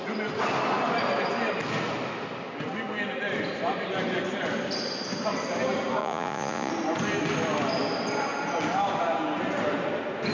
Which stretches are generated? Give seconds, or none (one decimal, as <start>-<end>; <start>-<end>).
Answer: 6.0-6.7